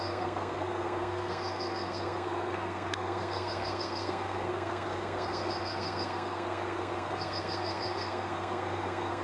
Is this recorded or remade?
remade